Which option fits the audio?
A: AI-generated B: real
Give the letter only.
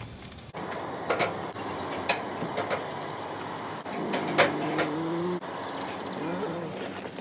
B